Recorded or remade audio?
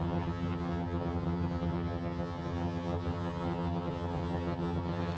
remade